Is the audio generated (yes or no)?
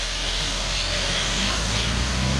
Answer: yes